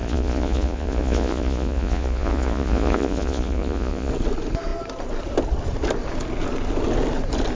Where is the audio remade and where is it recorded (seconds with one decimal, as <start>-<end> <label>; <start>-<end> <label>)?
0.0-4.1 remade; 4.1-7.5 recorded